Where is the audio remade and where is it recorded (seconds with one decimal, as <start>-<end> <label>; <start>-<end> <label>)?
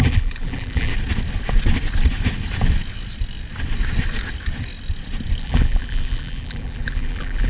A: 0.0-0.9 remade; 0.9-5.4 recorded; 5.4-7.5 remade